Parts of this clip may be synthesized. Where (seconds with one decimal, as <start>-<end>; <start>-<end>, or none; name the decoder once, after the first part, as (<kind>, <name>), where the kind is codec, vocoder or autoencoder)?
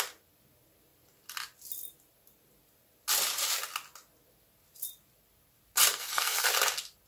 5.9-6.5 (codec, SNAC)